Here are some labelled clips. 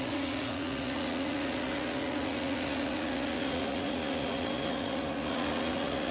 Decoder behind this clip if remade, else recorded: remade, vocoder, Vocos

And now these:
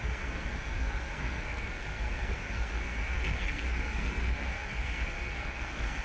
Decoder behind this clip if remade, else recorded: remade, codec, SNAC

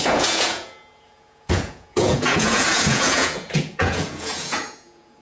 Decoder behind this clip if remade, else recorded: remade, vocoder, Vocos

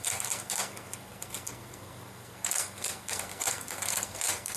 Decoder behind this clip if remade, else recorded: remade, codec, SNAC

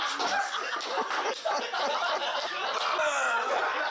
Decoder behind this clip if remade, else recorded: recorded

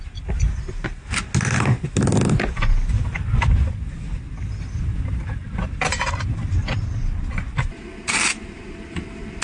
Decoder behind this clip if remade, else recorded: recorded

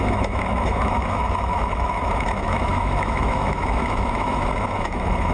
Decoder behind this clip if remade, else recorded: remade, autoencoder, DAC-VAE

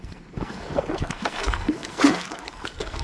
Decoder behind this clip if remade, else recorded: remade, codec, SNAC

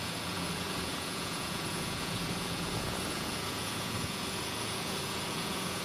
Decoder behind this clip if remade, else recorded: remade, vocoder, Vocos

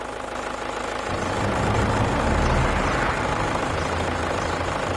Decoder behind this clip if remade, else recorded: recorded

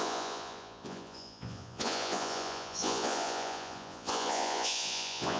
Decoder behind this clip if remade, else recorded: remade, vocoder, Vocos